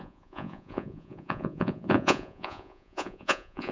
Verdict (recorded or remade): remade